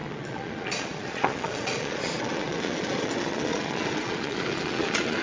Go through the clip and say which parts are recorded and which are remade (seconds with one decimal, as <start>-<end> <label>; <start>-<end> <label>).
0.0-5.2 remade